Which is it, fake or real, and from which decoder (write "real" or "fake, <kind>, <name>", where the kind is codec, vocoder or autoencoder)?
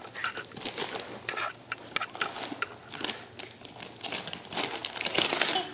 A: real